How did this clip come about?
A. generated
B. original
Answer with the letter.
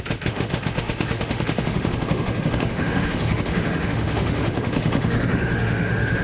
A